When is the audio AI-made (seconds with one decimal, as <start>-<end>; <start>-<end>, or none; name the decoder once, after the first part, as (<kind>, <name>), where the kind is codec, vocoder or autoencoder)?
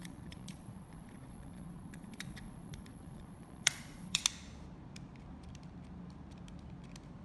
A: 0.0-4.2 (vocoder, Vocos)